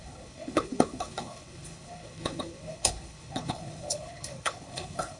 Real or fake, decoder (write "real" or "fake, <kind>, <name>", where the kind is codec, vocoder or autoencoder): fake, codec, HILCodec